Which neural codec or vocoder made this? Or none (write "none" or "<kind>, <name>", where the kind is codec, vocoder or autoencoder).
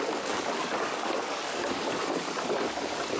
codec, DAC